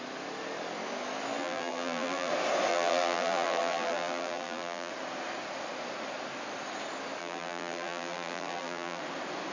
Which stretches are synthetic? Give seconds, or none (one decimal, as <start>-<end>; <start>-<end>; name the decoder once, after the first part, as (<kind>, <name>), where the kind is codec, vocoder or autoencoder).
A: 1.4-2.3 (vocoder, BigVGAN v2); 2.7-4.9; 7.2-9.0